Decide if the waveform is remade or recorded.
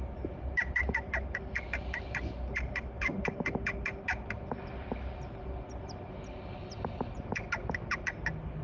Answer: recorded